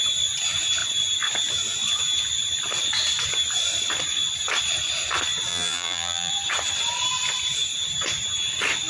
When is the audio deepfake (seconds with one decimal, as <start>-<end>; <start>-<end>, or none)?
5.5-6.3